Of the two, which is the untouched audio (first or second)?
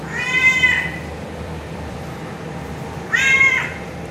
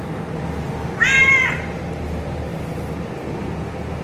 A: second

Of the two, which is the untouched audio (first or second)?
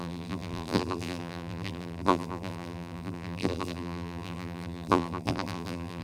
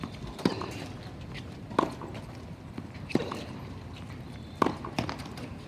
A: second